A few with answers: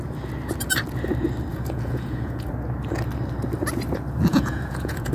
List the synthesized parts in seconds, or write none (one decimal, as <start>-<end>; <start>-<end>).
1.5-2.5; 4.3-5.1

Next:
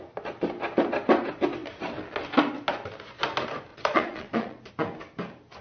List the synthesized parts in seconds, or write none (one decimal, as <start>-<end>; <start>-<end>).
3.7-4.7

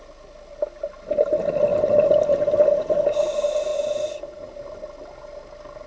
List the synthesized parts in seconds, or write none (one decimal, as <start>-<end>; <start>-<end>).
3.7-4.5